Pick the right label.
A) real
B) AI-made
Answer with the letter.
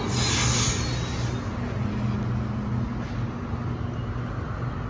A